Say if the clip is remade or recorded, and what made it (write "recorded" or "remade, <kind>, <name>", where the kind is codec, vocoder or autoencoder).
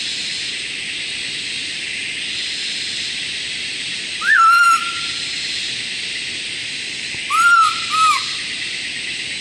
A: recorded